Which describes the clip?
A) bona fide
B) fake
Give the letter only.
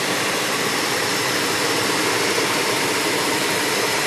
A